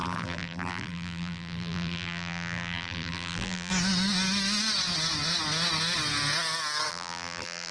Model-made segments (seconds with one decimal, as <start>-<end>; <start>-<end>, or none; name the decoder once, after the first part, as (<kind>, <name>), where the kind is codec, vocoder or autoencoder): 0.0-3.7 (vocoder, BigVGAN v2); 6.9-7.7